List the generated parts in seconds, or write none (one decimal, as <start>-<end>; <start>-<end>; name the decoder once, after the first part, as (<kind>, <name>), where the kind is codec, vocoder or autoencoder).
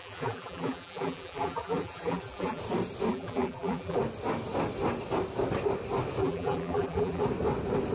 0.0-2.6 (vocoder, BigVGAN v2); 3.1-4.0; 6.2-7.2